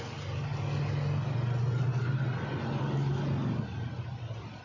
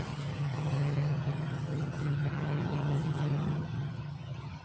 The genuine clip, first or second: first